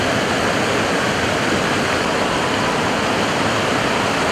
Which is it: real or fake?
real